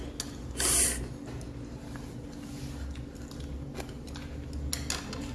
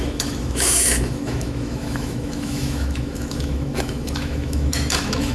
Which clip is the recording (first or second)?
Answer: first